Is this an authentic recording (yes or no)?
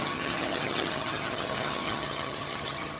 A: no